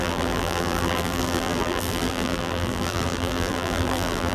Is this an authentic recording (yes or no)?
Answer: no